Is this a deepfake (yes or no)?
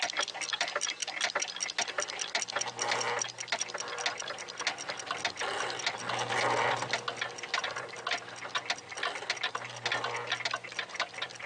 no